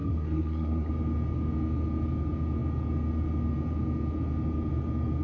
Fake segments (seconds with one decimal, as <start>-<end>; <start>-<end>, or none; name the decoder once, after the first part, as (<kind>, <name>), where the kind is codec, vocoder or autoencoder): 0.0-0.9 (codec, SNAC)